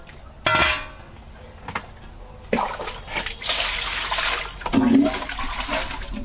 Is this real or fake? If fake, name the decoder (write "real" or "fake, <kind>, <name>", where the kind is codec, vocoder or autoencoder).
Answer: real